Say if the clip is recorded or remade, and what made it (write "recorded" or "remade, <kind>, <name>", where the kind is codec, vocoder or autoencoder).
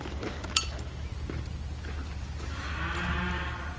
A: recorded